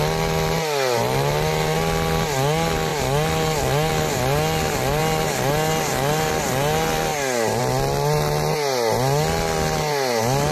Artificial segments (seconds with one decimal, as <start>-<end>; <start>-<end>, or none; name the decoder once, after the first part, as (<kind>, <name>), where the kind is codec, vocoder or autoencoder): none